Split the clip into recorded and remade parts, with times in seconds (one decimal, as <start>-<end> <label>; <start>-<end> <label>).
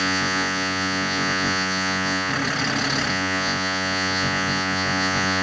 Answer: 0.0-2.3 remade; 2.3-3.1 recorded; 3.1-5.4 remade